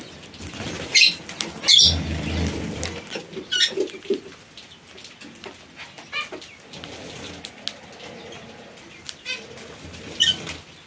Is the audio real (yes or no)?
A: yes